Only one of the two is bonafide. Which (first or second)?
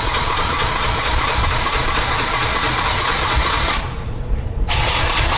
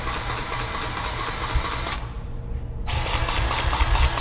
second